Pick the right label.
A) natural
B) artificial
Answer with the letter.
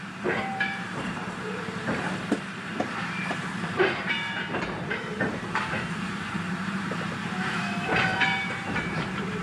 B